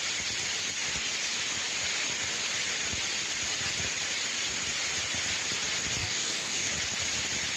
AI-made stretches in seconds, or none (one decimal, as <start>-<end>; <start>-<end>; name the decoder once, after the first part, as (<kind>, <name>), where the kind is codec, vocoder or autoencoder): 6.0-6.7 (codec, DAC)